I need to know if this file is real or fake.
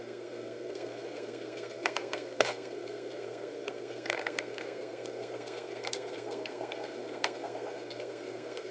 fake